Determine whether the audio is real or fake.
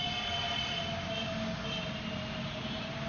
real